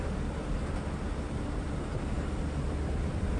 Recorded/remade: recorded